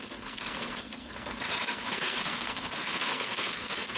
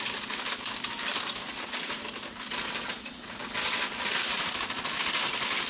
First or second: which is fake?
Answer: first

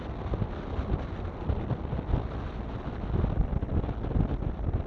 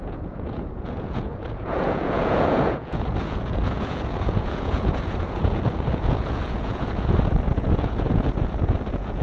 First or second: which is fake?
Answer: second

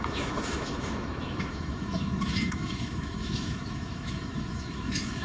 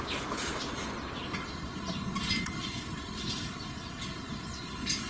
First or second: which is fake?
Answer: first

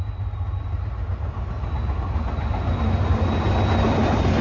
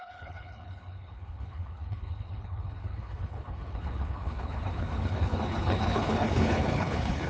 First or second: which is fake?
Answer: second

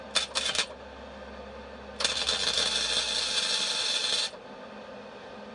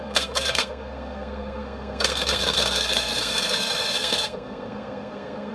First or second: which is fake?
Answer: second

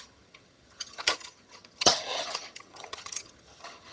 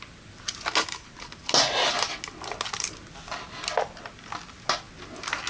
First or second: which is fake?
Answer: first